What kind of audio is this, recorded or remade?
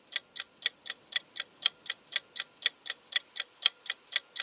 recorded